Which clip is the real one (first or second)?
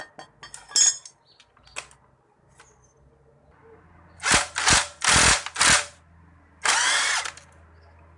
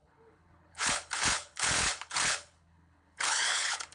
first